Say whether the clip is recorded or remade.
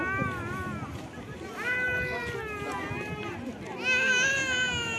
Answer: recorded